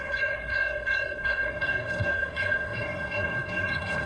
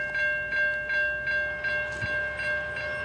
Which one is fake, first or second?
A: first